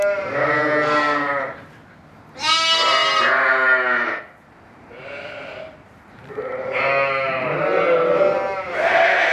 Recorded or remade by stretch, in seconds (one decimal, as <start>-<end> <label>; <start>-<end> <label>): 0.0-9.3 recorded